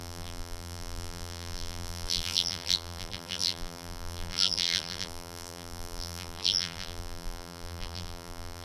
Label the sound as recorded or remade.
remade